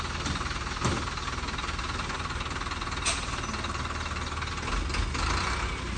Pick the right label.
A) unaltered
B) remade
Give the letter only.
A